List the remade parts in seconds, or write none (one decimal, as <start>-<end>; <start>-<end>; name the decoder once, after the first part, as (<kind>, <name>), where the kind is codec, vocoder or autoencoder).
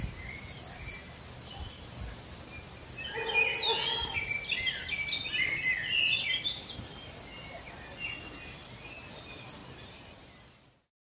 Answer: none